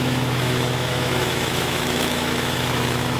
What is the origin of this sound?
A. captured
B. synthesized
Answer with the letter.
B